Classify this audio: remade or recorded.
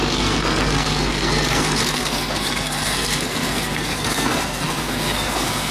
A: remade